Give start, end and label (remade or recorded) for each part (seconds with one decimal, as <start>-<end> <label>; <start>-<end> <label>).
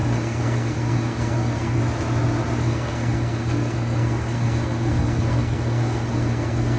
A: 0.0-1.8 remade; 1.8-2.6 recorded; 2.6-6.8 remade